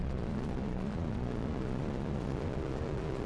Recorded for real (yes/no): no